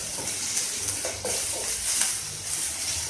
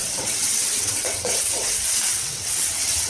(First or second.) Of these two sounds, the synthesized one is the second